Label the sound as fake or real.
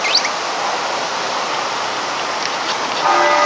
real